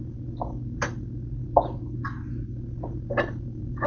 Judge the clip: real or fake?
real